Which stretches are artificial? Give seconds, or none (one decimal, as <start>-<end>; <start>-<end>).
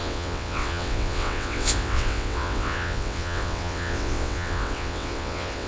0.0-5.7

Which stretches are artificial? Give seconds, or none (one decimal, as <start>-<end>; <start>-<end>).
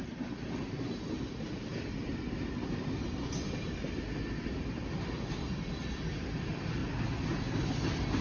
none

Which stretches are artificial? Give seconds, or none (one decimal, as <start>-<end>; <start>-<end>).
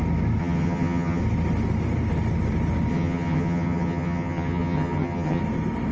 0.4-1.2; 2.9-5.4